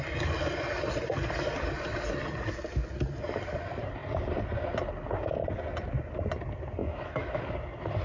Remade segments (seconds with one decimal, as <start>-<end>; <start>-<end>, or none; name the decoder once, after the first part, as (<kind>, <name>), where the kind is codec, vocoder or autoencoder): 6.8-7.4 (autoencoder, DAC-VAE)